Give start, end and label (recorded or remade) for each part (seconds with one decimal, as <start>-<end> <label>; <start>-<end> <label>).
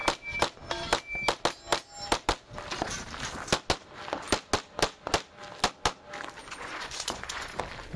0.0-6.4 recorded; 6.4-7.6 remade; 7.6-8.0 recorded